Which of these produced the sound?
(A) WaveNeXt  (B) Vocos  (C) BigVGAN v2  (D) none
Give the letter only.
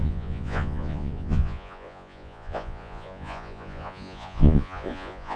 B